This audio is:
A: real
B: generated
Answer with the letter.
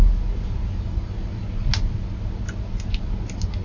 A